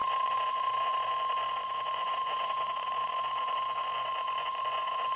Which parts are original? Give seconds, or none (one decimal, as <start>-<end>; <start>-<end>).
none